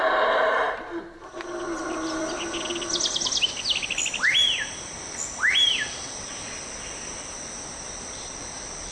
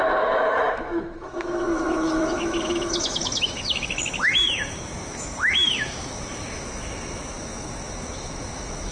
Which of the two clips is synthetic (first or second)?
second